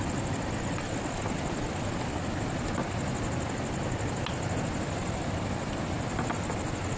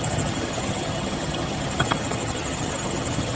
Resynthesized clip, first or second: second